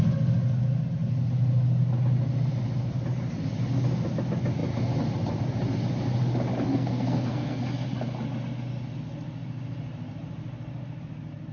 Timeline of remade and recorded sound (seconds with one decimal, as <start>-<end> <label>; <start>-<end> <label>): 0.0-6.7 recorded; 6.7-7.6 remade; 7.6-11.5 recorded